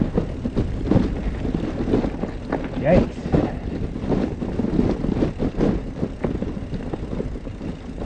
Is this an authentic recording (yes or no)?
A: yes